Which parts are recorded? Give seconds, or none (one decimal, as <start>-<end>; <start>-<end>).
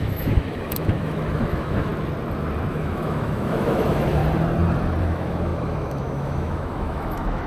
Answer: 1.9-2.7; 4.2-5.0